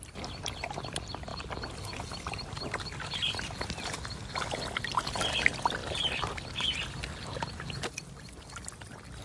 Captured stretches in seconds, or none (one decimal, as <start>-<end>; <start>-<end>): 0.0-9.2